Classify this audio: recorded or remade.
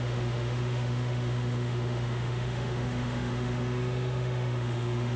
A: remade